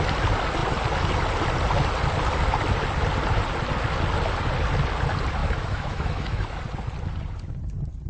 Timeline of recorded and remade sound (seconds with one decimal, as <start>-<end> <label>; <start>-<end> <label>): 0.0-5.4 recorded; 5.4-6.6 remade; 6.6-8.1 recorded